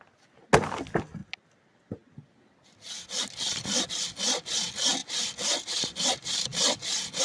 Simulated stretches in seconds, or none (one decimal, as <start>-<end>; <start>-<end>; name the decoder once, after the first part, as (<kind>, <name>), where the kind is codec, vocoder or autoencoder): none

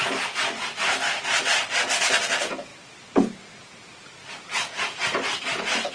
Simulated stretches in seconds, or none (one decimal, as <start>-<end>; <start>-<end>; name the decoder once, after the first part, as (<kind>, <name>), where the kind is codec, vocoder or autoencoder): none

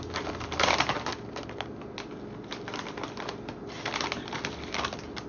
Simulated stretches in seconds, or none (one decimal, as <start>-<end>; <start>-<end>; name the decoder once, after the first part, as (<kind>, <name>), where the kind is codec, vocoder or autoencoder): none

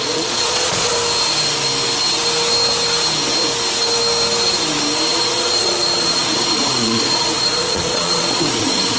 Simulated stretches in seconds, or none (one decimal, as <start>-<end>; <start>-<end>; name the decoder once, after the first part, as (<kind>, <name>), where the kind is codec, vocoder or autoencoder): 0.0-0.9 (vocoder, Vocos); 5.1-9.0

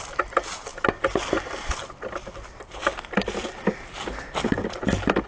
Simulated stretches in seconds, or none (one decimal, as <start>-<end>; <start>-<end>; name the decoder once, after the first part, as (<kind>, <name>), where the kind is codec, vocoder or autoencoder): none